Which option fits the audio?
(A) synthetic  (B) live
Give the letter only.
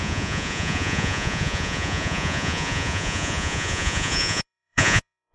A